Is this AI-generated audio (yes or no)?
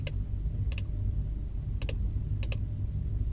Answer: no